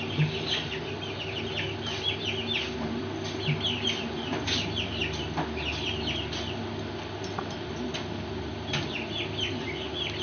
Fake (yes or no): no